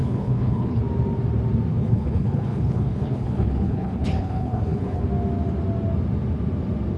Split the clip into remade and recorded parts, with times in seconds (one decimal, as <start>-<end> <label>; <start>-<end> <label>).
0.0-0.8 remade; 0.8-1.7 recorded; 1.7-5.0 remade; 5.0-7.0 recorded